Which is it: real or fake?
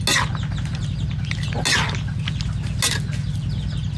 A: real